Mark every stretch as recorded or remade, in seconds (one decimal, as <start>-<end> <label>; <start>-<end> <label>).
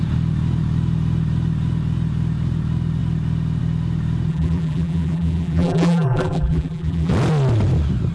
0.0-4.3 recorded; 4.3-7.1 remade; 7.1-8.1 recorded